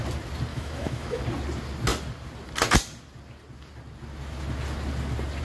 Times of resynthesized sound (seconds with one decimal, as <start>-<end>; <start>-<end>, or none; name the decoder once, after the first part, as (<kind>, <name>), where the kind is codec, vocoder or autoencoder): 0.5-1.2 (autoencoder, DAC-VAE)